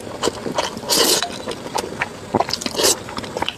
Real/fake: real